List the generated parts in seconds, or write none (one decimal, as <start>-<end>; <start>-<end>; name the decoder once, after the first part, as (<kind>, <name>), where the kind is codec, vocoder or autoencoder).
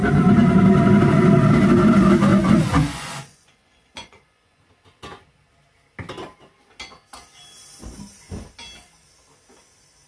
2.3-4.6 (vocoder, Vocos)